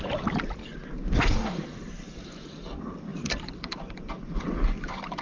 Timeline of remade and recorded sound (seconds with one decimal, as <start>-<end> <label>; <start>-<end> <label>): 0.0-0.8 remade; 0.8-2.0 recorded; 2.0-5.2 remade